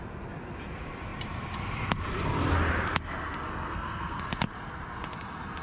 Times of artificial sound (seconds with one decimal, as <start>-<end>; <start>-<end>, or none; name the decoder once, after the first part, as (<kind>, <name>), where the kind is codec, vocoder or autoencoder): 3.5-4.2 (codec, SNAC)